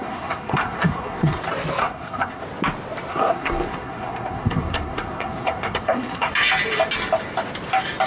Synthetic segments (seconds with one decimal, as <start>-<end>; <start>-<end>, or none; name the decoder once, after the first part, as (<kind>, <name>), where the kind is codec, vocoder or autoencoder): 0.0-1.4 (codec, SNAC); 1.8-2.4; 3.1-6.3

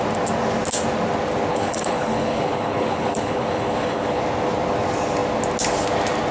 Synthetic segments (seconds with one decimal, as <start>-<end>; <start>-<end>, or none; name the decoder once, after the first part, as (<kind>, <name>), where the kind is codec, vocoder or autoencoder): 1.5-4.2 (codec, HILCodec)

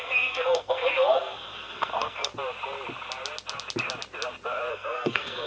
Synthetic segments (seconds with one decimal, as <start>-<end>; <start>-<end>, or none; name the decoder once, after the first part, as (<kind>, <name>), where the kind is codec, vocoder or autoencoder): 0.0-2.3 (codec, SNAC); 4.7-5.5

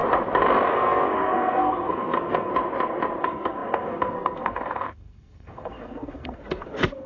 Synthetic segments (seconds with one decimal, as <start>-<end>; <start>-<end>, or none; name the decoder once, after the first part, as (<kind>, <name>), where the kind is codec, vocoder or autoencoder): 0.7-2.5 (codec, SNAC); 3.2-7.1

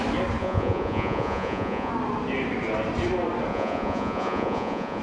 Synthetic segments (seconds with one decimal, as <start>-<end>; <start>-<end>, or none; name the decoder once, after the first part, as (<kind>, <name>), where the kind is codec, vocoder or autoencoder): 0.4-1.9 (vocoder, Vocos); 3.5-5.0

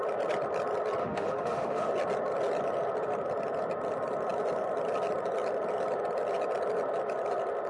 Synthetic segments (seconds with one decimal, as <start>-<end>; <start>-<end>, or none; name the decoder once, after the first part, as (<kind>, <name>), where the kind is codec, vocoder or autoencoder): 1.0-1.9 (autoencoder, DAC-VAE)

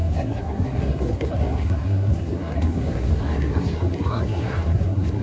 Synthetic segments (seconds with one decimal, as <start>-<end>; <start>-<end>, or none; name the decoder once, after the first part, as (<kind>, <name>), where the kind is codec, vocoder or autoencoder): 0.0-5.2 (codec, SNAC)